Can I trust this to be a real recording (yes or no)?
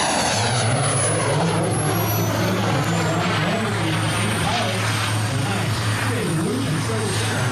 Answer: yes